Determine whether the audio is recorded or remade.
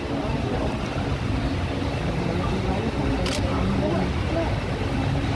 recorded